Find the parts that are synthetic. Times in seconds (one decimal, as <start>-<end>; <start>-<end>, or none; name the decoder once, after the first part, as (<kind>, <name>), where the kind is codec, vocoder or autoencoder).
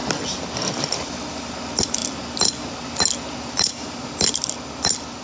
none